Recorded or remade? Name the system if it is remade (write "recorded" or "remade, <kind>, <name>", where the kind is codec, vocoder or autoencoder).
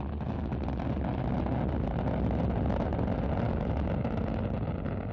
recorded